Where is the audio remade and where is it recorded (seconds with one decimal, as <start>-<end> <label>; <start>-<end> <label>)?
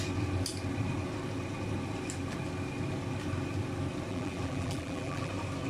0.0-4.1 recorded; 4.1-5.3 remade; 5.3-5.7 recorded